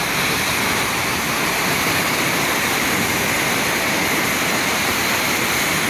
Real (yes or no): yes